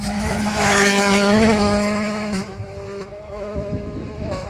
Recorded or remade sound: remade